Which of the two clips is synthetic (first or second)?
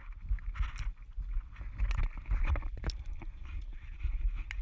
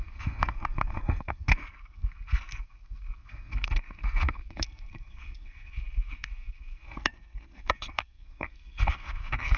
second